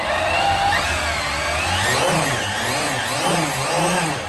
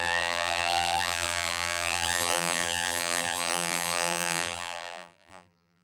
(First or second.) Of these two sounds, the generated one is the second